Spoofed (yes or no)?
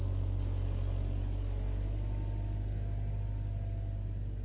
no